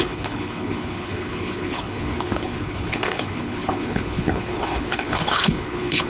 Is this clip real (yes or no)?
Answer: no